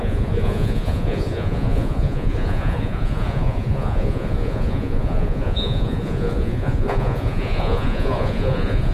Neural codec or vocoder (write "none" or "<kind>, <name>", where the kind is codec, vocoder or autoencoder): vocoder, Vocos